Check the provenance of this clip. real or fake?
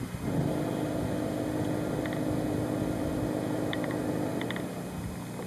real